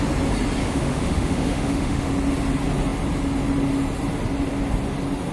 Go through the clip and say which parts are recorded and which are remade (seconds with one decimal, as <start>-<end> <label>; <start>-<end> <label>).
0.0-0.6 recorded; 0.6-2.1 remade; 2.1-5.3 recorded